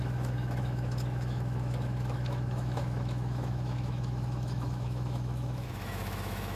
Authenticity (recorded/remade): remade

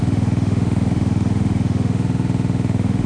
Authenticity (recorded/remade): remade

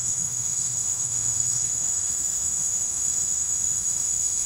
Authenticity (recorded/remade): remade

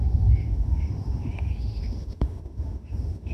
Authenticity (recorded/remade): remade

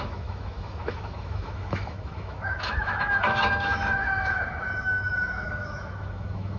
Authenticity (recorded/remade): remade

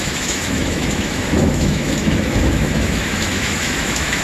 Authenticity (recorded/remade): remade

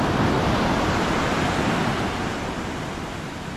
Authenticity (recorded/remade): recorded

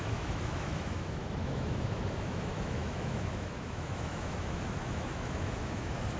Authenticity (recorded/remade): remade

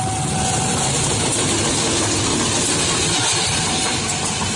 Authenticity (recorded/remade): recorded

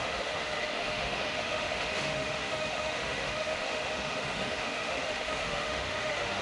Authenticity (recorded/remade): remade